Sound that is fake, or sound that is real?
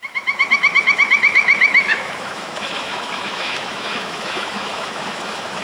fake